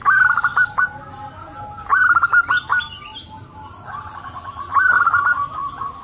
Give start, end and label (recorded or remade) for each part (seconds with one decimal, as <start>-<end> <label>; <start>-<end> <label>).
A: 0.0-0.5 remade; 0.5-4.1 recorded; 4.1-6.0 remade